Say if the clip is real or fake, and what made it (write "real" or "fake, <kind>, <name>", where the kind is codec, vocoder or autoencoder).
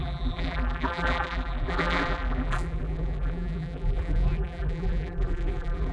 fake, vocoder, BigVGAN v2